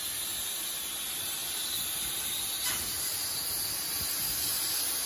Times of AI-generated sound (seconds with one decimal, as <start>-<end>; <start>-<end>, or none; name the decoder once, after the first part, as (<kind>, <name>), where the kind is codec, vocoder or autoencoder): 1.4-4.5 (vocoder, BigVGAN v2)